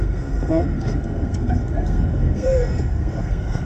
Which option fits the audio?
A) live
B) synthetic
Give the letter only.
B